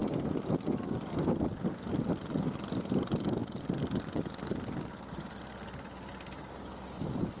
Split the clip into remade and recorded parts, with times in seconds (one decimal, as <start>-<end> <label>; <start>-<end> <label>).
0.0-7.4 recorded